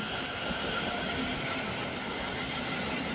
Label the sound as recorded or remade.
recorded